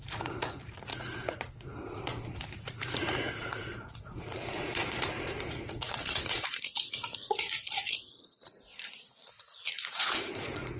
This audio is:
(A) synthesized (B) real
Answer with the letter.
A